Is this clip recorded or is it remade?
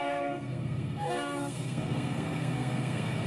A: remade